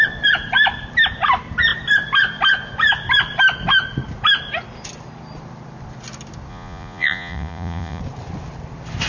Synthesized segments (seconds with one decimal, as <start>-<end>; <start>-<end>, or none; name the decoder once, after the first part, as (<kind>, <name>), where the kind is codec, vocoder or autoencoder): 6.5-8.0 (vocoder, Vocos)